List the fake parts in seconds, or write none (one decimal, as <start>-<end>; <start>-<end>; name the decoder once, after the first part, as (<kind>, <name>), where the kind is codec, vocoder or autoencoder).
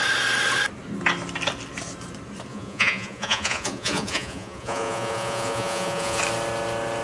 2.5-6.2 (vocoder, Vocos)